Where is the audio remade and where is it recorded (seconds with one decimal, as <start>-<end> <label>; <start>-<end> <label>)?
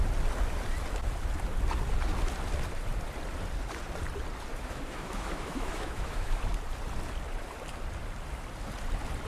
0.0-4.5 recorded; 4.5-6.5 remade; 6.5-9.3 recorded